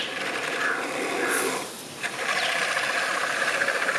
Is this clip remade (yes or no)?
no